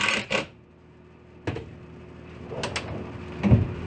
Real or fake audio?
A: real